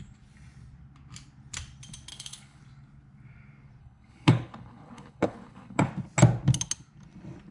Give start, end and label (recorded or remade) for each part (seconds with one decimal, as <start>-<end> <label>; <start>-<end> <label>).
0.0-2.1 recorded; 2.1-2.6 remade; 2.6-3.8 recorded; 3.8-5.9 remade; 5.9-7.5 recorded